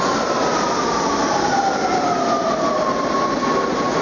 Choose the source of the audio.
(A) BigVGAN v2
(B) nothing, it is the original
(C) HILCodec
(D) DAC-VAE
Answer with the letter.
B